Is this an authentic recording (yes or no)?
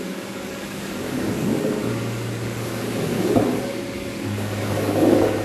no